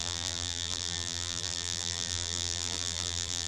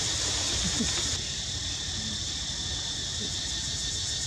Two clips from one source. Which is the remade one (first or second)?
first